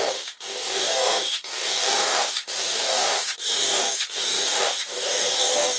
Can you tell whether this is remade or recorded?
remade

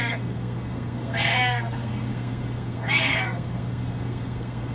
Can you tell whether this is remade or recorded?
remade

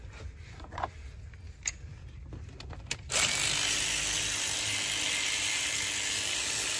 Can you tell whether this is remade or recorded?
recorded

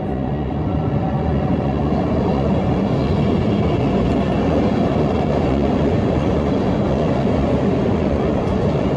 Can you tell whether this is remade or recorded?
remade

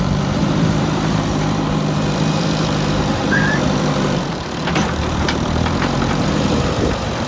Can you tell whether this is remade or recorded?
remade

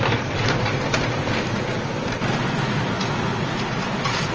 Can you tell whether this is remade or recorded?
recorded